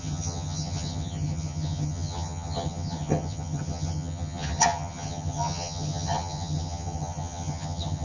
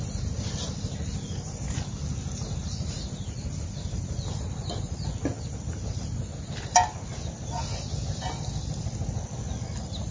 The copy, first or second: first